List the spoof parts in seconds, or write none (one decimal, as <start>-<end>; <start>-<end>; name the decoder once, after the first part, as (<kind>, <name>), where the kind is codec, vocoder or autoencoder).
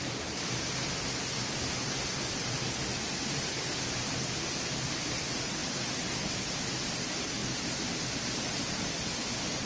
5.6-6.1 (vocoder, BigVGAN v2)